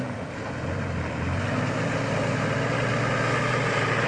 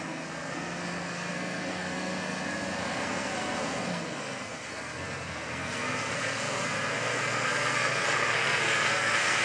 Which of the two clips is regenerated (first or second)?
second